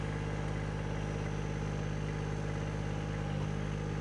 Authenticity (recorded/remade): recorded